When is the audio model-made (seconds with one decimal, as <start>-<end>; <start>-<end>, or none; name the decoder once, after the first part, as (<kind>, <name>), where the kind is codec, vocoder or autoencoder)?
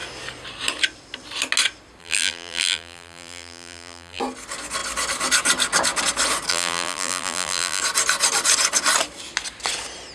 2.0-4.2 (vocoder, BigVGAN v2); 6.5-7.8